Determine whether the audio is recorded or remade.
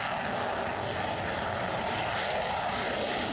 recorded